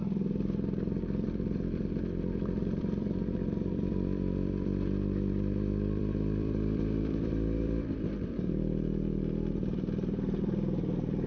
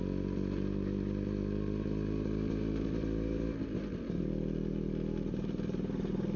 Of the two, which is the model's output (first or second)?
first